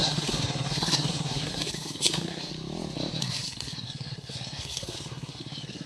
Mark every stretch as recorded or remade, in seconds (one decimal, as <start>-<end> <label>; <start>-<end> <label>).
0.0-2.5 remade; 2.5-3.2 recorded; 3.2-5.9 remade

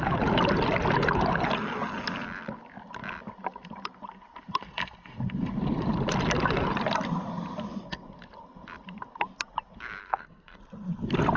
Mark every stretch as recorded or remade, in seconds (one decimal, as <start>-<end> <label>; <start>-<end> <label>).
0.0-10.0 recorded; 10.0-10.6 remade; 10.6-11.4 recorded

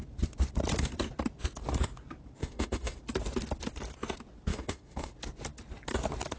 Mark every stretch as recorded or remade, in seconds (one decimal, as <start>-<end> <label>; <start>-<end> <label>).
0.0-2.4 recorded; 2.4-3.0 remade; 3.0-4.5 recorded; 4.5-5.1 remade; 5.1-6.4 recorded

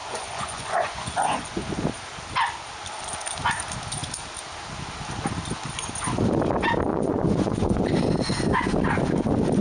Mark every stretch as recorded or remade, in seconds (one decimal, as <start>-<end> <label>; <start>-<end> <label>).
0.0-1.6 remade; 1.6-6.9 recorded; 6.9-7.8 remade; 7.8-9.6 recorded

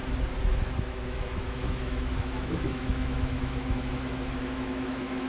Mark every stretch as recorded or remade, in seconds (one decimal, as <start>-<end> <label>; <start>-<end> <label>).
0.0-0.8 recorded; 0.8-5.3 remade

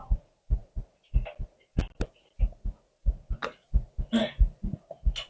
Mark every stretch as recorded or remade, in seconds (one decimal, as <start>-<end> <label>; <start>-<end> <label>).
0.0-5.3 recorded

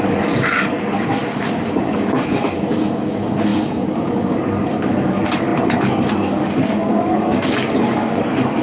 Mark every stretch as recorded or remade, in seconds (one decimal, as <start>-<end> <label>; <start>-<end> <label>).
0.0-8.6 remade